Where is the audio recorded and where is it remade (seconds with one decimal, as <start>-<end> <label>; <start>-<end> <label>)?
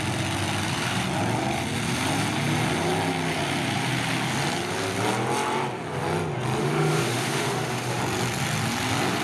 0.0-6.6 recorded; 6.6-8.0 remade; 8.0-9.2 recorded